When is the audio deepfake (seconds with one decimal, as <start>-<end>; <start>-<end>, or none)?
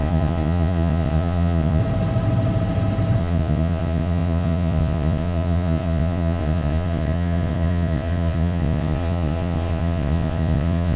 0.0-1.8; 3.2-11.0